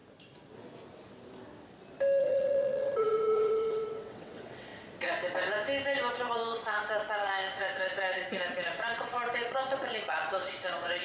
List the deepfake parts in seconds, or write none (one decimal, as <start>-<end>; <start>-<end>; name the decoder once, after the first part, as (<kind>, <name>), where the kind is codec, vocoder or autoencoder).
2.2-4.7 (vocoder, WaveNeXt); 6.1-11.0